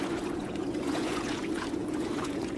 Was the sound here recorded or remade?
remade